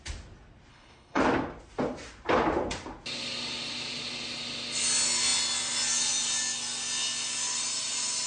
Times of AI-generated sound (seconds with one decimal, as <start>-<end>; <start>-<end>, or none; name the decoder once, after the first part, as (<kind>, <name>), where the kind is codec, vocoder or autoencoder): 0.7-1.2 (codec, HILCodec)